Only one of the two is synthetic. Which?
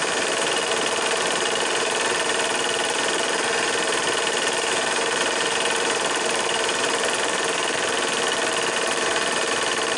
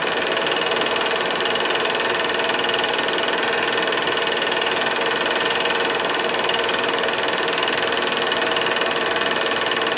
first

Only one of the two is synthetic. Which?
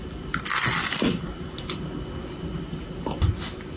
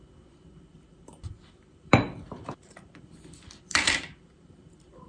second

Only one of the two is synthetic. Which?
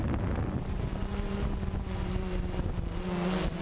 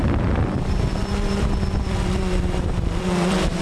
second